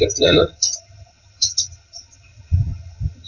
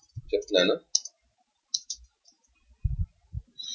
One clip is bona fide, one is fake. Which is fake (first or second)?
first